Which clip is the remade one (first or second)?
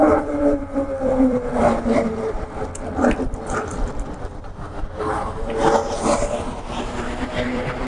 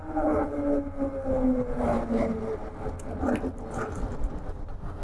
first